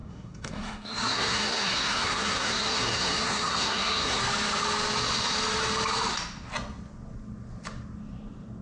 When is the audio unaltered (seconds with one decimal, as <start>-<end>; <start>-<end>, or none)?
4.2-8.6

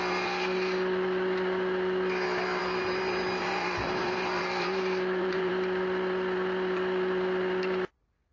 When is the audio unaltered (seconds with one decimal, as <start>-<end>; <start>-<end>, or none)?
0.0-2.6; 5.5-8.3